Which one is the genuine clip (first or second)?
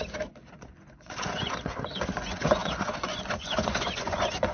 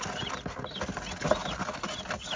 second